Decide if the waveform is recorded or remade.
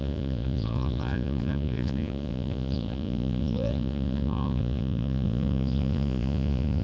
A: remade